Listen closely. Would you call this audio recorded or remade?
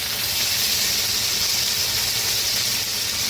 recorded